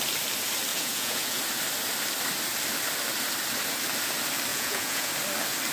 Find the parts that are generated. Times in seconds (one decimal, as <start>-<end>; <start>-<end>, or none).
0.7-1.4; 4.5-5.1